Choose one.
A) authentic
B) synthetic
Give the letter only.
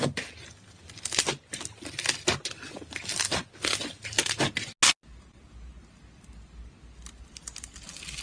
A